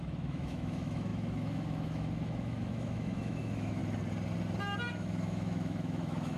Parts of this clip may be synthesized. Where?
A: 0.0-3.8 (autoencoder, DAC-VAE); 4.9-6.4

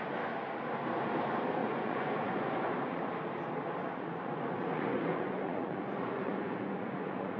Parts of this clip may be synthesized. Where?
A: 1.6-3.0 (vocoder, Vocos); 3.8-7.4

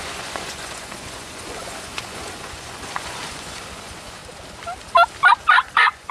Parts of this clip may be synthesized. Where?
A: 0.0-4.2 (vocoder, Vocos); 5.4-6.1

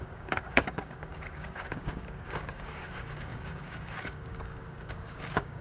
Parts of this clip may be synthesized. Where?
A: 0.0-5.6 (codec, DAC)